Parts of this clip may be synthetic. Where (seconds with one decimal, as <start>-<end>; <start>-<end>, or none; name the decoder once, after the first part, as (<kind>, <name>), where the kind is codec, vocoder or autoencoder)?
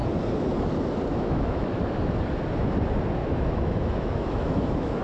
1.1-1.8 (autoencoder, DAC-VAE); 3.2-5.0